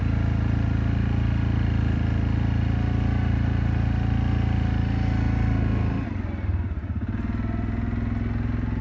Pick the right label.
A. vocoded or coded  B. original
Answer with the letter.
B